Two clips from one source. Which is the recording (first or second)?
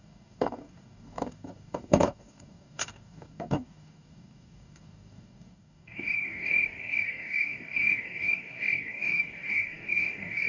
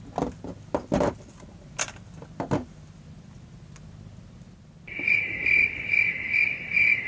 second